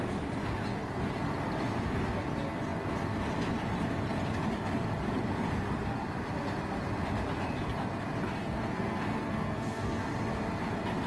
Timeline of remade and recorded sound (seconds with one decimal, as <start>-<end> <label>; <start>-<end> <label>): 0.0-8.4 recorded; 8.4-10.0 remade; 10.0-11.1 recorded

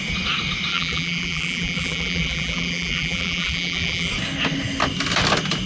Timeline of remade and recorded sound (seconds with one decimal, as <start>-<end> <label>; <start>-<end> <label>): 0.0-0.7 recorded; 0.7-4.1 remade; 4.1-5.7 recorded